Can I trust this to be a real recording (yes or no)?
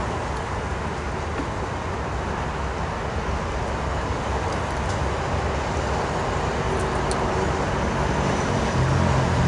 yes